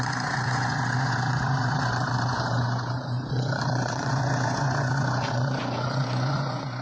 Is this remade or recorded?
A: remade